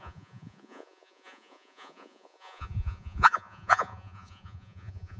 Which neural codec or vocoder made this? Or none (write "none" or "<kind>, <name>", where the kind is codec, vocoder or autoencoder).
vocoder, Vocos